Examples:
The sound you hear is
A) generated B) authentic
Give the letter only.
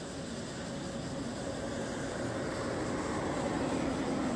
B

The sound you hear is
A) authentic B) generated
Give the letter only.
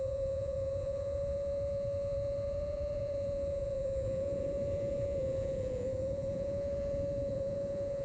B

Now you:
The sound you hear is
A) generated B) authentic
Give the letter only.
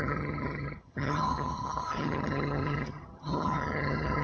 A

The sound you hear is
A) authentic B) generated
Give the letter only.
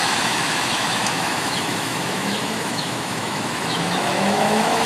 B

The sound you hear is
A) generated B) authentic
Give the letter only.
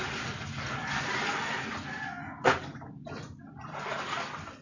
B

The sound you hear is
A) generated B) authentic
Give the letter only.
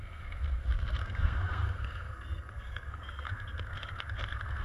A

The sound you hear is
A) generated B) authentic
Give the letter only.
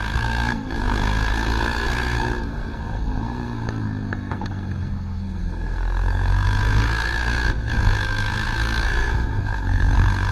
A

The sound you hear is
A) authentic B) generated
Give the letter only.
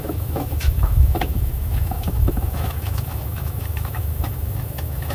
B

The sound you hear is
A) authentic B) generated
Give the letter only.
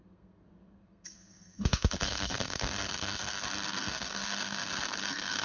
B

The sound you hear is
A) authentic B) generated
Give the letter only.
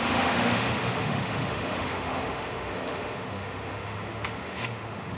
B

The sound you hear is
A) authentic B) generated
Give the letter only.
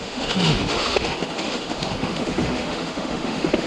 B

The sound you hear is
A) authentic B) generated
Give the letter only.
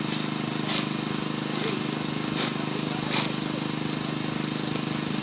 A